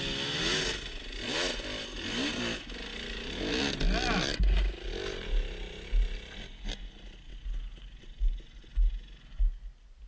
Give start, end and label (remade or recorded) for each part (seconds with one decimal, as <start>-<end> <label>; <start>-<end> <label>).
0.0-10.1 recorded